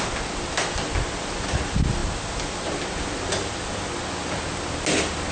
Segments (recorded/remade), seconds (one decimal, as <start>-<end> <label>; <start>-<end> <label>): 0.0-5.3 recorded